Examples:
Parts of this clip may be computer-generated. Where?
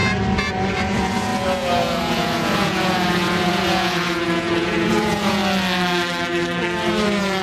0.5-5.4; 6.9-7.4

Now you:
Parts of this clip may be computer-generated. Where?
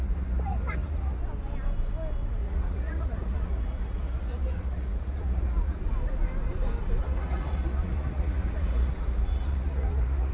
0.0-1.2; 2.4-5.8; 7.0-10.3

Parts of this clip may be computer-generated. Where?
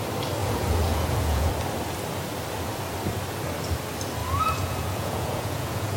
0.4-1.5; 4.2-6.0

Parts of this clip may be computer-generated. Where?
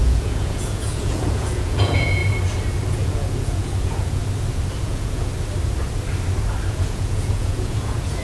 0.0-2.2; 2.9-4.2; 4.8-5.3; 6.7-8.2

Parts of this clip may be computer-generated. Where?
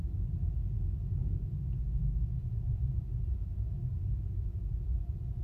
0.6-3.0; 3.5-4.2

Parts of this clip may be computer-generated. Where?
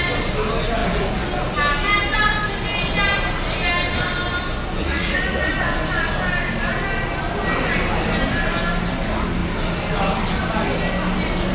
4.8-5.5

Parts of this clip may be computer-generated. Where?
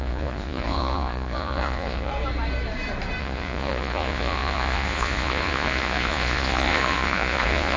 0.0-2.1; 3.2-7.8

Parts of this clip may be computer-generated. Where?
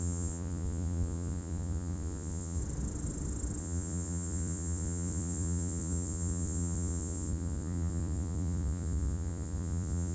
0.0-2.6; 3.6-10.1